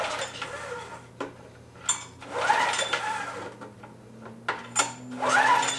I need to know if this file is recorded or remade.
recorded